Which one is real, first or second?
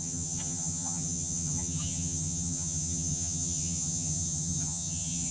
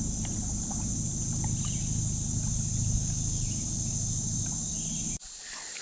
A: second